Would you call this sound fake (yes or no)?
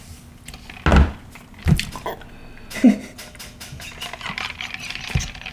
no